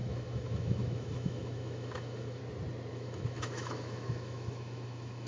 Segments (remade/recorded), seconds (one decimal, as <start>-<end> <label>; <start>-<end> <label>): 0.0-2.4 remade; 2.4-2.9 recorded; 2.9-5.3 remade